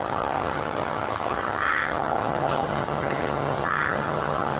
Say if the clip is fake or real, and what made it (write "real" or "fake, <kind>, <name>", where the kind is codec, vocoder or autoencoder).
fake, vocoder, HiFi-GAN